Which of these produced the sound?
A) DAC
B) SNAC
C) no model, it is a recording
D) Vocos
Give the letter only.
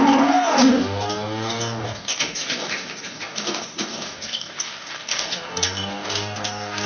A